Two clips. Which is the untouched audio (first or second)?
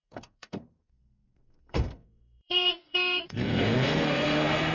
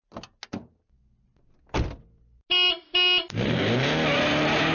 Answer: second